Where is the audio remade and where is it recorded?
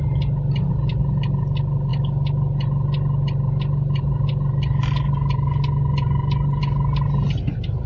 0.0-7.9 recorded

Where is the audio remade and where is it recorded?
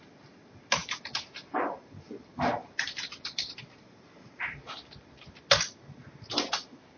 0.0-0.8 recorded; 0.8-1.6 remade; 1.6-2.6 recorded; 2.6-4.9 remade; 4.9-7.0 recorded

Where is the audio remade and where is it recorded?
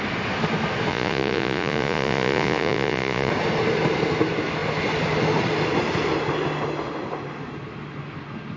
0.0-0.9 recorded; 0.9-3.3 remade; 3.3-8.6 recorded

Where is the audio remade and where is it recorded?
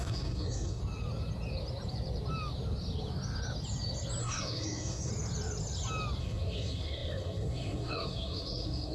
0.0-0.8 remade; 0.8-4.2 recorded; 4.2-5.1 remade; 5.1-6.2 recorded; 6.2-8.9 remade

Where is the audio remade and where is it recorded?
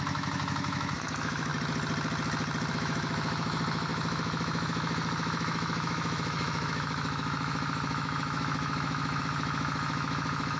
0.0-1.5 remade; 1.5-2.7 recorded; 2.7-10.6 remade